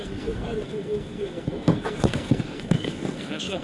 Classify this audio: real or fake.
fake